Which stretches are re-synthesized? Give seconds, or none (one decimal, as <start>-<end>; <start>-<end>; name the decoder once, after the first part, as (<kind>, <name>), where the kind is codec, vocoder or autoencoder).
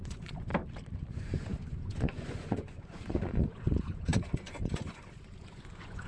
0.0-0.5 (vocoder, Vocos); 1.1-6.1